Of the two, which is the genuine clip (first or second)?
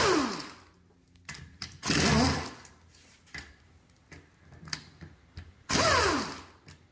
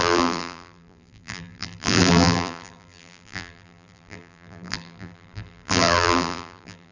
first